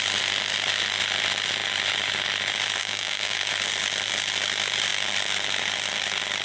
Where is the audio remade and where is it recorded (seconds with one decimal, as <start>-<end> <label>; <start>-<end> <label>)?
0.0-2.8 recorded; 2.8-3.5 remade; 3.5-6.4 recorded